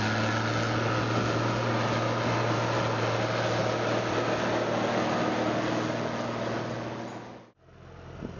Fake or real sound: real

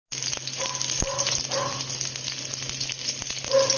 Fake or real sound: real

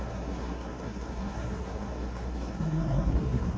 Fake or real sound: fake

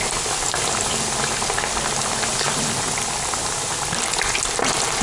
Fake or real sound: real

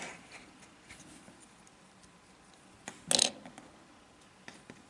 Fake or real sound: real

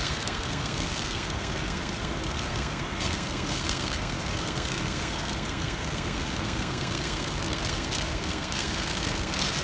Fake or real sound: fake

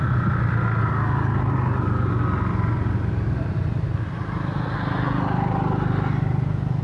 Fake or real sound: real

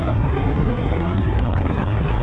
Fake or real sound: fake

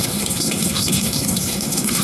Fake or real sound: fake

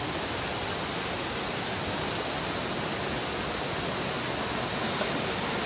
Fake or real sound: real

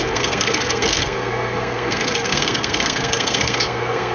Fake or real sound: fake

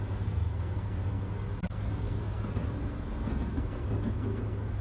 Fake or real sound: fake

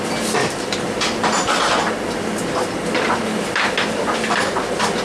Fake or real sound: real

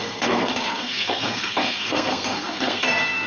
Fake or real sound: fake